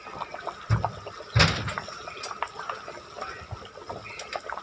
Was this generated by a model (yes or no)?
no